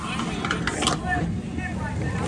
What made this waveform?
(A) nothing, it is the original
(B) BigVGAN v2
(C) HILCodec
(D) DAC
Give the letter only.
A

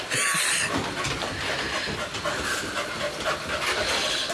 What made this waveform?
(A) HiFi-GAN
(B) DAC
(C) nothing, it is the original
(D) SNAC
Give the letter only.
C